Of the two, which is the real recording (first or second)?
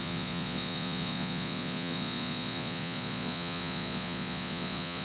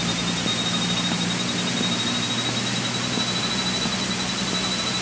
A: second